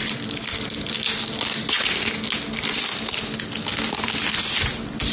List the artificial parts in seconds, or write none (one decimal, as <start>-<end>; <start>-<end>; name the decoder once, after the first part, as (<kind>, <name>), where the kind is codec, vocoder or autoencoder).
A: none